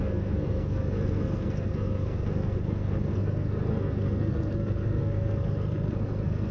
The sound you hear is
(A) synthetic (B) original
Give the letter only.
A